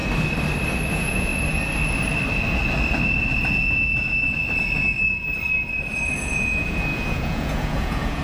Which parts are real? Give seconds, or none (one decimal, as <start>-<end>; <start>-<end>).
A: 0.0-0.9; 1.3-6.2